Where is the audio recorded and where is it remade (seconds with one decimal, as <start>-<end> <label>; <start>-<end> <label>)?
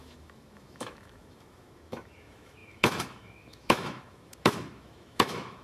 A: 0.0-5.6 remade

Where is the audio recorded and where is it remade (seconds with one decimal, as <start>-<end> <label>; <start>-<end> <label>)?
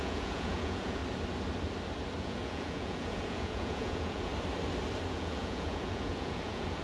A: 0.0-1.0 remade; 1.0-2.2 recorded; 2.2-4.3 remade; 4.3-5.1 recorded; 5.1-6.8 remade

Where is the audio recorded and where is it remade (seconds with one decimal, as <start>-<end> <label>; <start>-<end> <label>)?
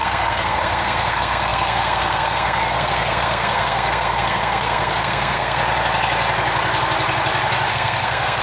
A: 0.0-5.6 remade; 5.6-7.7 recorded; 7.7-8.4 remade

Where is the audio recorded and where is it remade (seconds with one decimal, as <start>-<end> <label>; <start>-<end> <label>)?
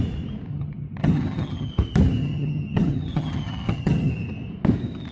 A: 0.0-0.5 recorded; 0.5-1.7 remade; 1.7-2.2 recorded; 2.2-4.1 remade; 4.1-5.1 recorded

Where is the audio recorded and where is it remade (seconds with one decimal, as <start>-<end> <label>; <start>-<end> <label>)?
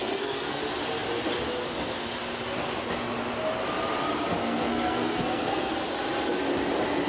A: 0.0-0.6 remade; 0.6-4.4 recorded; 4.4-5.7 remade; 5.7-7.1 recorded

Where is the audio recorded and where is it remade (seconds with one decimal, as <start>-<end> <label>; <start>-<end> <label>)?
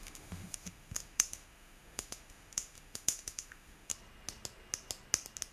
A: 0.0-3.9 remade; 3.9-5.5 recorded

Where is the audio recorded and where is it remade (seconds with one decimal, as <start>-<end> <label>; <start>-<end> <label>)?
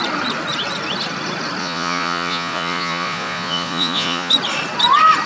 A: 0.0-1.6 recorded; 1.6-4.3 remade; 4.3-5.3 recorded